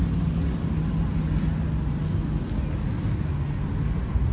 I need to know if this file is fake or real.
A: real